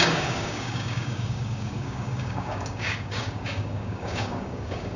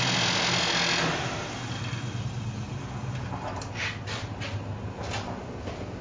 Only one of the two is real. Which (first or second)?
second